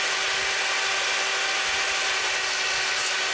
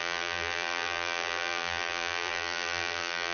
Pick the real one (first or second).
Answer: first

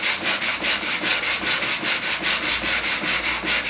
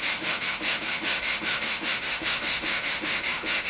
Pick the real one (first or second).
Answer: first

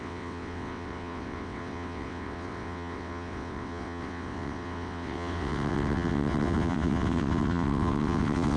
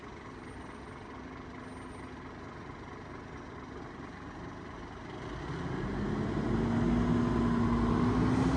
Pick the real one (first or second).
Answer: second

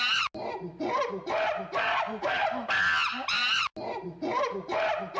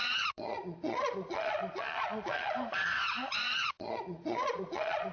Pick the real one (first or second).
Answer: first